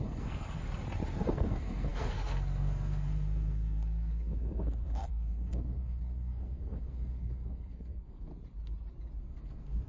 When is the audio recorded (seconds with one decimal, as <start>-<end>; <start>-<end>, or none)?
0.6-1.1; 8.3-9.2